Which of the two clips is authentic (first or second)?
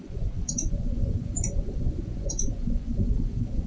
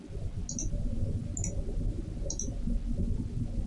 second